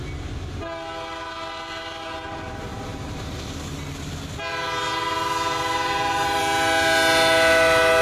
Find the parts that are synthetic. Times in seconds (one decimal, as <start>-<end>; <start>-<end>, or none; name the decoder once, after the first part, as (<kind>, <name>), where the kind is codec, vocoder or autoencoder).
2.7-3.8 (vocoder, BigVGAN v2); 4.5-6.4